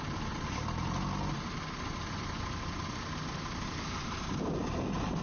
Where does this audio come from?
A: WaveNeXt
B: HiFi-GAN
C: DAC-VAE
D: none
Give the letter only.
D